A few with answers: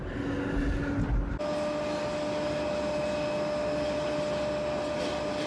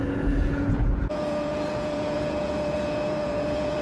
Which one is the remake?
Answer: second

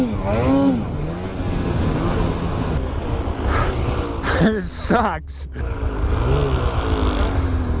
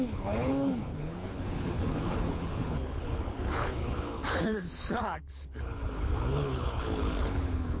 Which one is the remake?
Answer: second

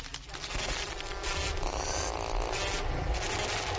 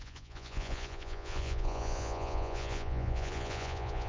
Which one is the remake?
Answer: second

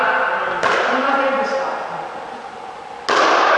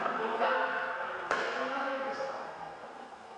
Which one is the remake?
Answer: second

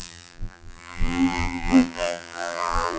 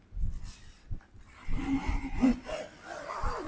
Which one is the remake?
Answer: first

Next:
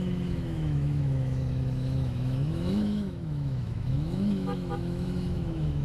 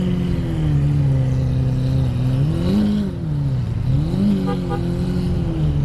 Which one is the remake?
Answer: first